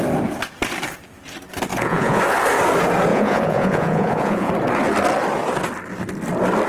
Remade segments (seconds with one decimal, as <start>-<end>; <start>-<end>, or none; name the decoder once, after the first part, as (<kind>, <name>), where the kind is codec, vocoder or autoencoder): 1.7-2.2 (vocoder, Vocos); 3.1-4.5